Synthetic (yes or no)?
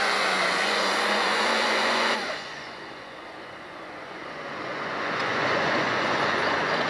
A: yes